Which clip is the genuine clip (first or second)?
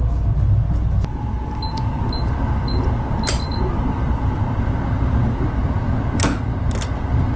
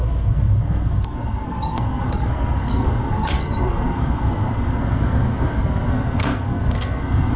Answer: first